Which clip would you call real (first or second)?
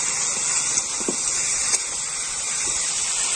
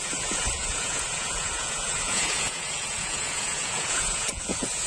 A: first